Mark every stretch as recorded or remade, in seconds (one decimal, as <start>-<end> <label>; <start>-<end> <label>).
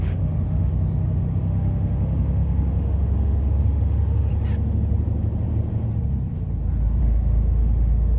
0.0-0.7 remade; 0.7-1.4 recorded; 1.4-4.3 remade; 4.3-7.0 recorded; 7.0-8.2 remade